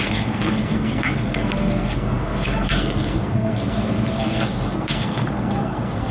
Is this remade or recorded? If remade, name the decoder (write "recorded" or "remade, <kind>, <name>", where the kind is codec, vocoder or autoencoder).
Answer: remade, codec, SNAC